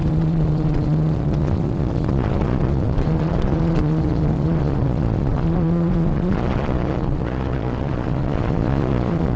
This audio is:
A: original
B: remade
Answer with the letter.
B